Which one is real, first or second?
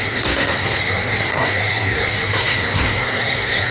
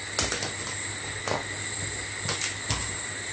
second